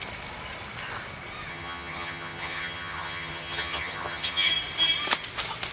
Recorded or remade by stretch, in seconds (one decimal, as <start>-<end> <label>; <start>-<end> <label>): 0.0-1.5 recorded; 1.5-4.5 remade; 4.5-5.7 recorded